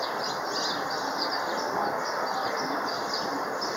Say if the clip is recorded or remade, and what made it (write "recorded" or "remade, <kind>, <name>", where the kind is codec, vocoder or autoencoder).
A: recorded